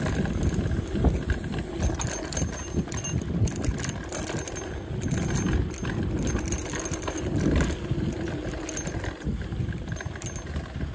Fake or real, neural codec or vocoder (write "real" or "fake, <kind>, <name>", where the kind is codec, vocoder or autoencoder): real